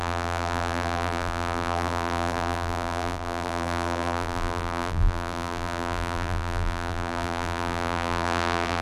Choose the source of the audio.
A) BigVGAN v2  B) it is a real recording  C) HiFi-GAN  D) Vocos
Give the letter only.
A